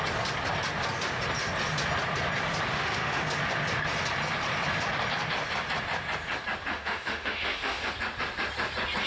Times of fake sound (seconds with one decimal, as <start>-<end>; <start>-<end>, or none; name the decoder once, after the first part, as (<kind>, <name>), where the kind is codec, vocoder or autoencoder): 2.7-3.2 (autoencoder, DAC-VAE); 6.7-7.9